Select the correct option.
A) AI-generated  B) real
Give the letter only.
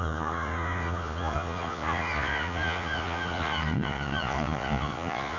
A